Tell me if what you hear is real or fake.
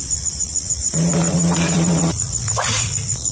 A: fake